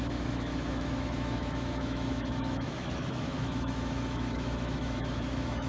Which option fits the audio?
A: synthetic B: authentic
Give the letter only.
A